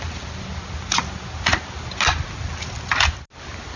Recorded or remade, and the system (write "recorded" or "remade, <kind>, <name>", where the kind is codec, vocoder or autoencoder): recorded